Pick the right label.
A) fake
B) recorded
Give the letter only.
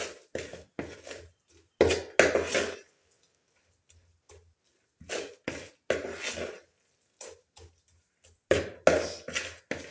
B